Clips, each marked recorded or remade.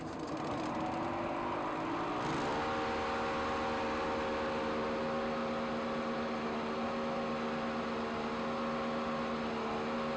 recorded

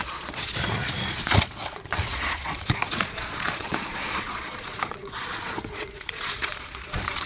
remade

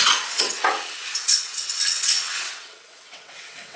remade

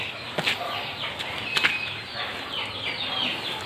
recorded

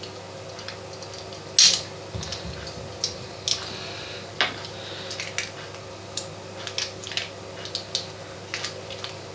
recorded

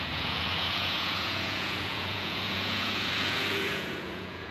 remade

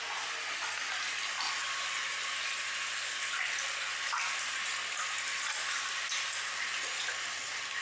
recorded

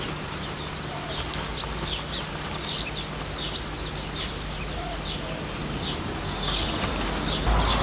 recorded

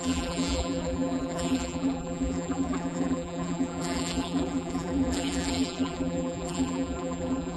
remade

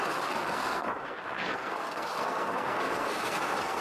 remade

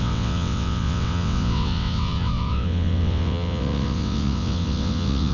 remade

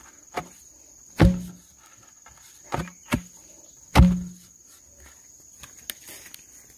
recorded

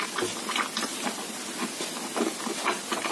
recorded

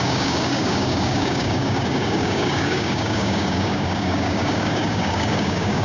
remade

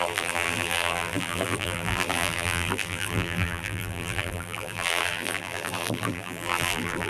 remade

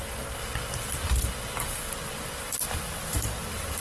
recorded